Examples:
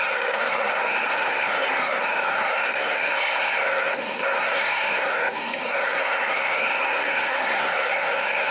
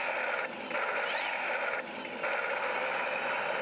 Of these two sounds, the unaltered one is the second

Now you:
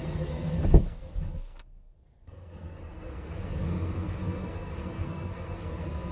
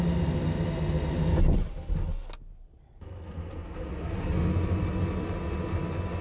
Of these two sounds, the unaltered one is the second